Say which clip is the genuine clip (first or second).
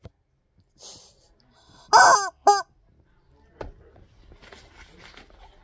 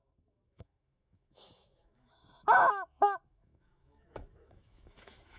first